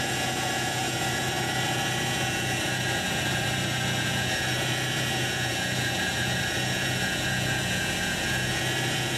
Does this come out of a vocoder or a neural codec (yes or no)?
yes